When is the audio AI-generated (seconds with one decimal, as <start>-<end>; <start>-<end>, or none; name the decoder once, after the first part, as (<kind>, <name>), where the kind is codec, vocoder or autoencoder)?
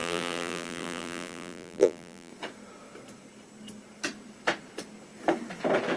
0.0-2.3 (vocoder, BigVGAN v2)